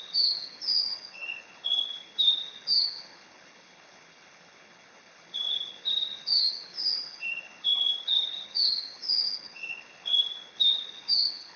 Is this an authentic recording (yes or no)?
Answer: no